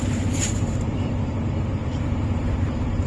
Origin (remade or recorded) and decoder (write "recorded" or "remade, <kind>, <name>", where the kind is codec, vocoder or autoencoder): remade, vocoder, BigVGAN v2